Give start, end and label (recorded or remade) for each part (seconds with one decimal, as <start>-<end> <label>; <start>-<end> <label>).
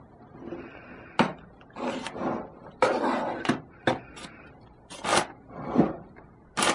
0.0-6.7 recorded